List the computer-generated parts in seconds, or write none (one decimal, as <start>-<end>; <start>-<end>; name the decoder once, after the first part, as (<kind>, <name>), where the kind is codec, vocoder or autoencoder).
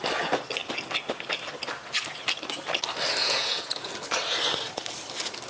3.2-3.9 (vocoder, Vocos)